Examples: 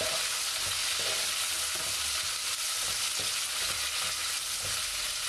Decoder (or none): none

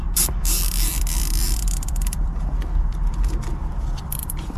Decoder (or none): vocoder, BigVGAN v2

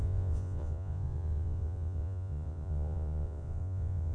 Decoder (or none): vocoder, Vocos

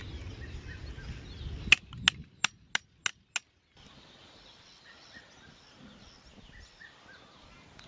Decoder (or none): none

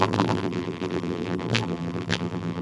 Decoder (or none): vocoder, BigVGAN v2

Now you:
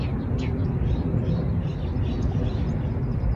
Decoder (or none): none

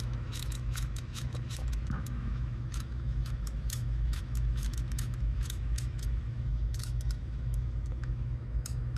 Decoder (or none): autoencoder, DAC-VAE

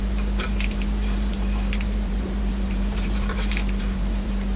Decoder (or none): vocoder, BigVGAN v2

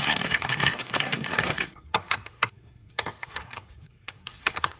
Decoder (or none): codec, SNAC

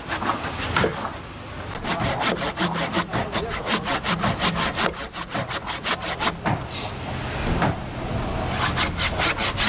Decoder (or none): none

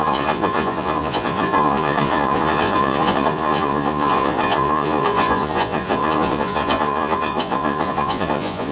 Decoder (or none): vocoder, Vocos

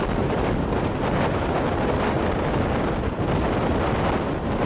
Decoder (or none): none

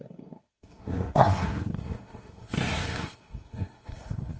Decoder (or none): codec, SNAC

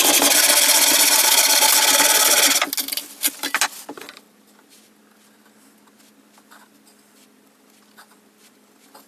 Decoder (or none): none